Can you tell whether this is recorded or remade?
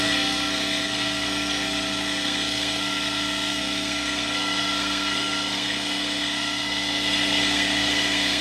remade